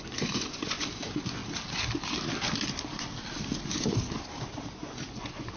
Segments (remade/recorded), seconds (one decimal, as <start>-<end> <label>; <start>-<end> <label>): 0.0-1.4 remade; 1.4-4.7 recorded; 4.7-5.6 remade